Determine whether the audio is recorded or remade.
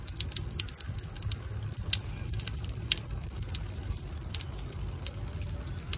recorded